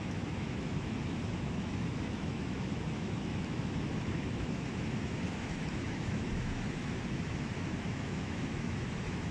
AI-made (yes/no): yes